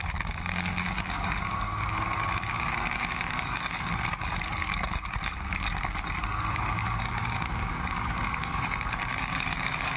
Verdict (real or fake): fake